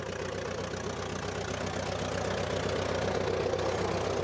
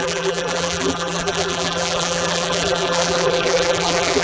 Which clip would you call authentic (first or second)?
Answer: first